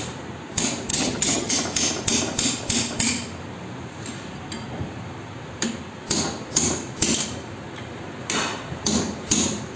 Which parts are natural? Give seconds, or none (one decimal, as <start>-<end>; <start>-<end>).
0.0-0.9; 1.5-9.8